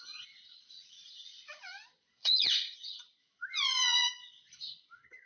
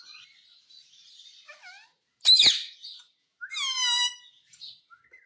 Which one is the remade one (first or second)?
first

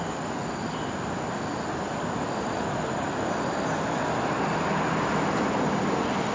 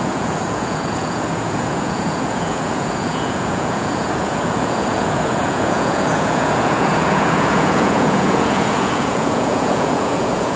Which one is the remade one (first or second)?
second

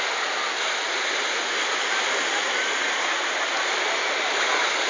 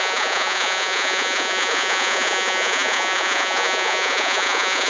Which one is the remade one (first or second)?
second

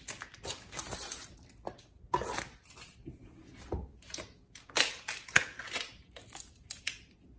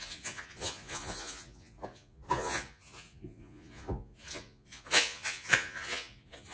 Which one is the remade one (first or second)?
second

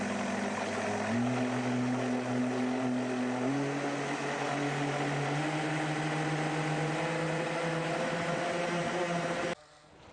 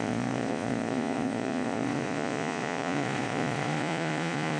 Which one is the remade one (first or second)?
second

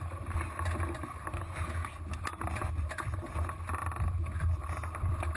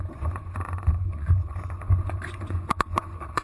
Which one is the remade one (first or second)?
second